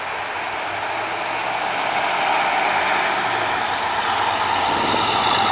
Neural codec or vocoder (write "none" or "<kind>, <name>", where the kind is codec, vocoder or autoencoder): none